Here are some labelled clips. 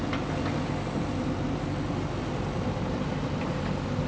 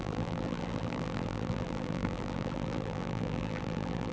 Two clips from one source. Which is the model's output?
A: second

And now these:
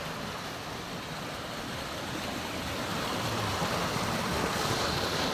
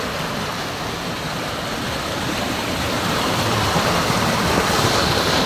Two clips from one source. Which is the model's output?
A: second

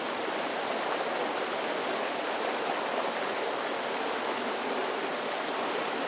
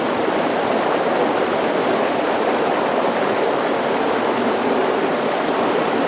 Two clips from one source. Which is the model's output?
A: second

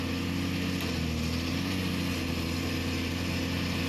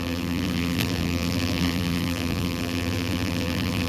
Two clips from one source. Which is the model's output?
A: second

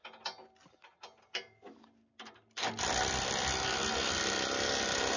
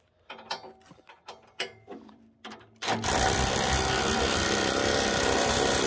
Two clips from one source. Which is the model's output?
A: second